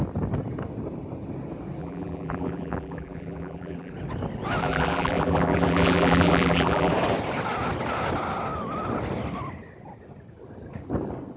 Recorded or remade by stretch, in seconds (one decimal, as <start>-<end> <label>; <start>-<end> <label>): 0.0-1.8 recorded; 1.8-3.9 remade; 3.9-4.6 recorded; 4.6-6.9 remade; 6.9-11.4 recorded